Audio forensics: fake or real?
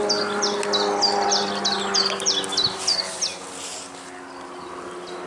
real